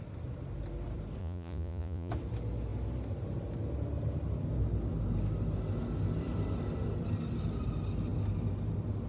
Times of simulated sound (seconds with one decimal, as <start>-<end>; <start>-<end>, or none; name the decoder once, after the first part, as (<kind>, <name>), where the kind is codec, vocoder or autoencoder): 1.2-2.1 (vocoder, Vocos)